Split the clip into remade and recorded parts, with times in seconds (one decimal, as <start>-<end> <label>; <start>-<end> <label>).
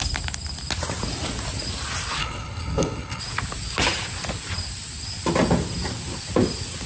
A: 0.0-2.2 recorded; 2.2-3.2 remade; 3.2-6.9 recorded